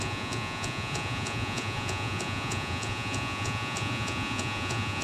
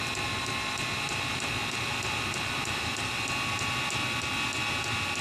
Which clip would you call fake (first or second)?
first